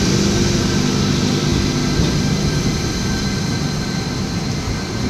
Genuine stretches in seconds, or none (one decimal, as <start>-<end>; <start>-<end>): 0.0-5.1